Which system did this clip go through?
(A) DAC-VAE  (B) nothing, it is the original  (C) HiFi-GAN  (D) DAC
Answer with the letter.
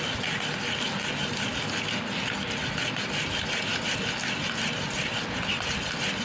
B